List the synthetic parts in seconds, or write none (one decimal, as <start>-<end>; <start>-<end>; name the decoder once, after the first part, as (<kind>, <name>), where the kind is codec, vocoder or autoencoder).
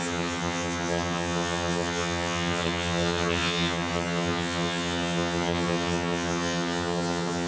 0.0-7.5 (vocoder, HiFi-GAN)